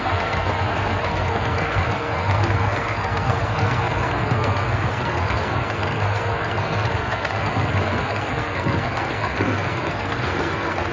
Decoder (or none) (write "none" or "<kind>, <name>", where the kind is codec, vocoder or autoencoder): codec, SNAC